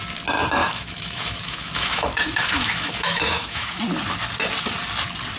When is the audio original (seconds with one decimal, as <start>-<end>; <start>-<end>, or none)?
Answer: 0.0-0.6; 3.8-5.4